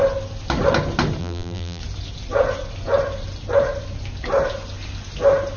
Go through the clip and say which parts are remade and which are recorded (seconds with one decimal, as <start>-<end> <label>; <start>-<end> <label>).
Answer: 0.0-1.2 recorded; 1.2-1.8 remade; 1.8-5.6 recorded